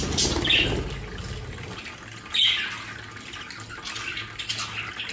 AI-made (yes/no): no